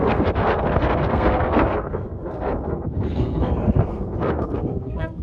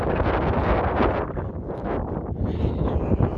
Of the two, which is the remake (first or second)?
first